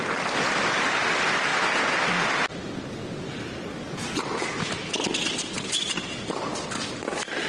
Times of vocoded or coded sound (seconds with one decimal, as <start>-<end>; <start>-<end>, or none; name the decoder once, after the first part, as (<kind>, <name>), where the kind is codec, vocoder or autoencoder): 0.0-1.5 (vocoder, BigVGAN v2); 5.7-6.5